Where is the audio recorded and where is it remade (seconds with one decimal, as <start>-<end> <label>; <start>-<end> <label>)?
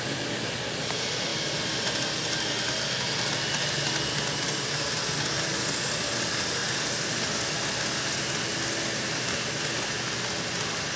0.0-11.0 recorded